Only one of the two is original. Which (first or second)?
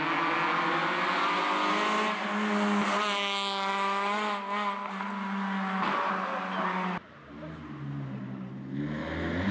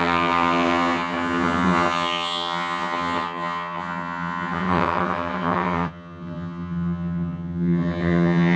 first